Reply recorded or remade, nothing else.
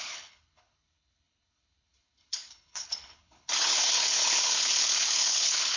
remade